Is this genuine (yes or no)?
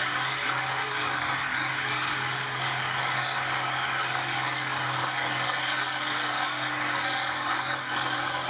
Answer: no